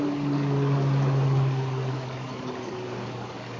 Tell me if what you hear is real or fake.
fake